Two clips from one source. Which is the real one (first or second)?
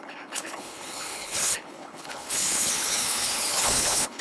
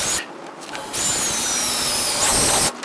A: second